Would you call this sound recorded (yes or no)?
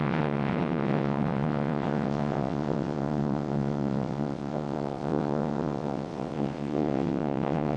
no